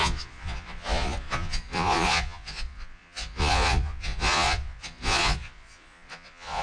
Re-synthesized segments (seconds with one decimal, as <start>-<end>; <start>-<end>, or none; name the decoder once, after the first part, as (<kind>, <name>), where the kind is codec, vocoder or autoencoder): 0.0-6.6 (vocoder, Vocos)

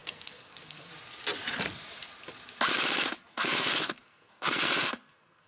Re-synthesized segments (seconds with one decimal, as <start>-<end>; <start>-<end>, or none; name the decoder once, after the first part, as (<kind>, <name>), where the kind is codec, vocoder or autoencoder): 0.0-0.9 (codec, SNAC); 3.3-5.5

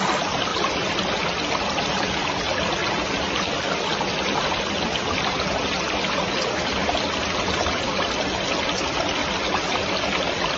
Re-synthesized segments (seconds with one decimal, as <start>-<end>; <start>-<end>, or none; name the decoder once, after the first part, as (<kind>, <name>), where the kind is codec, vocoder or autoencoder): none

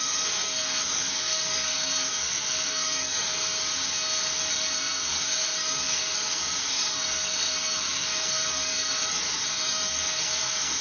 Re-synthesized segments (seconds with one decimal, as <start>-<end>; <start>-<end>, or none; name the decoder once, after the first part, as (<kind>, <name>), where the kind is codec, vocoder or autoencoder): 0.0-3.4 (codec, SNAC); 4.5-10.8

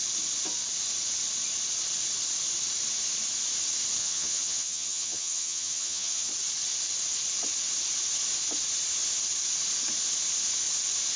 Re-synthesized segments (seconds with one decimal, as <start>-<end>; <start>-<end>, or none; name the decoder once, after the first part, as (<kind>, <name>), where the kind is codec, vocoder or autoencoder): 4.0-6.3 (vocoder, HiFi-GAN)

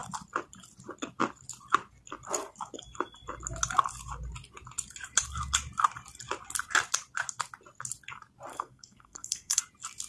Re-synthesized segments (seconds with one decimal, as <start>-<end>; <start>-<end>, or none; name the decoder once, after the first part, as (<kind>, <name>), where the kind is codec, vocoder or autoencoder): 8.5-9.6 (codec, SNAC)

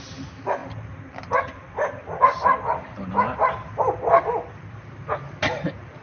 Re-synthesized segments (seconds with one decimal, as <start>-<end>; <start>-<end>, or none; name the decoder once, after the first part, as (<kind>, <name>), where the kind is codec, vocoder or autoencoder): none

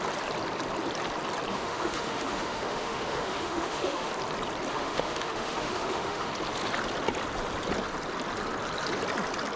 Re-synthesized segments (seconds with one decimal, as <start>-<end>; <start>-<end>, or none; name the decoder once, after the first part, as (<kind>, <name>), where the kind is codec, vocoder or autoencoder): 1.5-4.1 (autoencoder, DAC-VAE); 4.7-6.3